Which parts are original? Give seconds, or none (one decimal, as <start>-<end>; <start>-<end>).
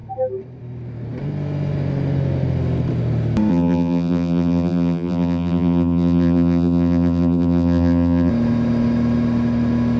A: 0.0-3.5; 8.3-10.0